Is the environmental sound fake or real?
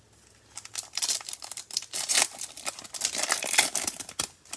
real